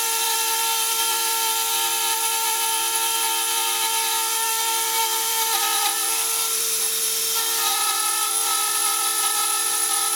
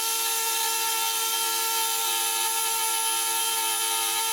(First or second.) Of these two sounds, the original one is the second